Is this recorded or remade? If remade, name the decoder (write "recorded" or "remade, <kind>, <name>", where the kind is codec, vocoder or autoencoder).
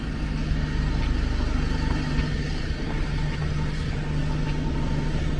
recorded